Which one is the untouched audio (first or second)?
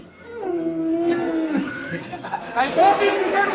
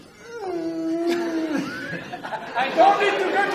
second